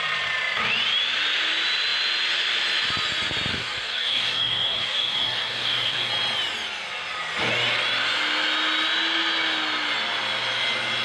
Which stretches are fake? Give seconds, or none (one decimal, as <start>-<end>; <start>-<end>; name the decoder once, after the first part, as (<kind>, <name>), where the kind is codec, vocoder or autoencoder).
3.5-6.1 (codec, DAC)